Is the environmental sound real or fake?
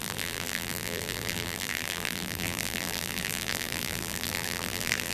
fake